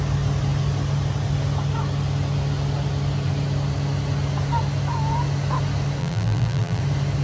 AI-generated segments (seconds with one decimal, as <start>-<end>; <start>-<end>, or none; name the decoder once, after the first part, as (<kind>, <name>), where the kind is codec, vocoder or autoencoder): 6.0-6.8 (vocoder, BigVGAN v2)